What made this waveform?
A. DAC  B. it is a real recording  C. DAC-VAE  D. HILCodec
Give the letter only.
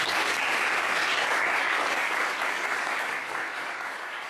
A